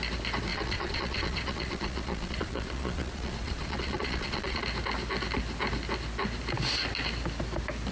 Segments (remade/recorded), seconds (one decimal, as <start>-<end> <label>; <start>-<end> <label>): 0.0-0.5 recorded; 0.5-4.6 remade; 4.6-7.9 recorded